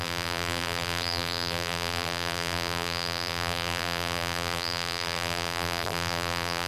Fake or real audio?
fake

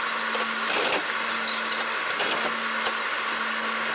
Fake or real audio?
real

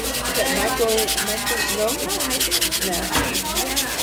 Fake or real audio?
real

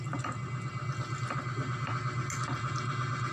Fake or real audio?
real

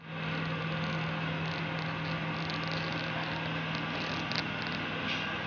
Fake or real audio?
real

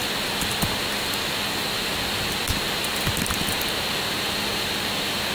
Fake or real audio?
real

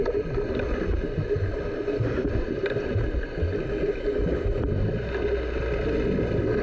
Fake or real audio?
real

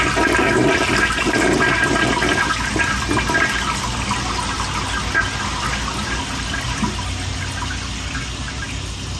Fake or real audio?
real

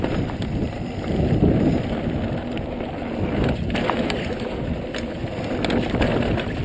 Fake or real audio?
real